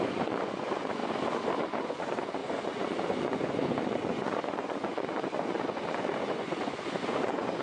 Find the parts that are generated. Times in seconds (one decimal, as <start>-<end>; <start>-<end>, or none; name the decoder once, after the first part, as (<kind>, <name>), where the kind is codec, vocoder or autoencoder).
0.0-1.0 (vocoder, Vocos); 1.6-7.6